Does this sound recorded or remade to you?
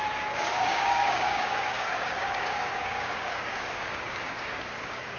remade